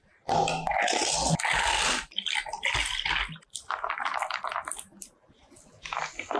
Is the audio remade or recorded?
recorded